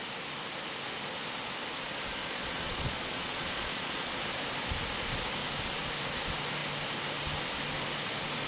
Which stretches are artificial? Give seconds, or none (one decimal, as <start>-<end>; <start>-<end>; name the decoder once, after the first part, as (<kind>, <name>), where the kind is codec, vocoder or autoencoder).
2.2-4.1 (vocoder, Vocos)